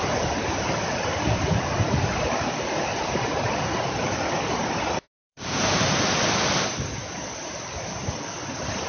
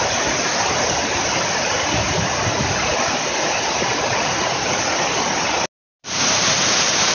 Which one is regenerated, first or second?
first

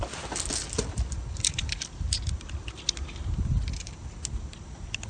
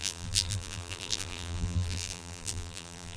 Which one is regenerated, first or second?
second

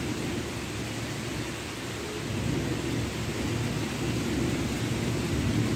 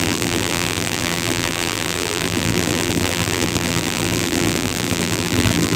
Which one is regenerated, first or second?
second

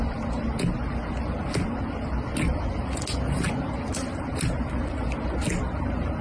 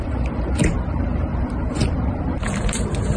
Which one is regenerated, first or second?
second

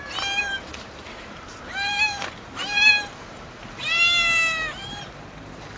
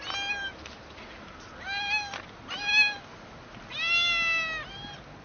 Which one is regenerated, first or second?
first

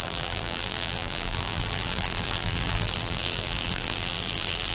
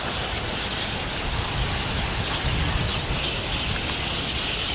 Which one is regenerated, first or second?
first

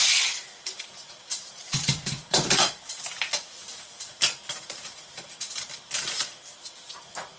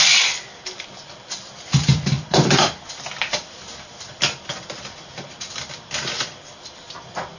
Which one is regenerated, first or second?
first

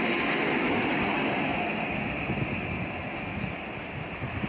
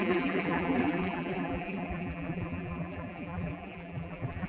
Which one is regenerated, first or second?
second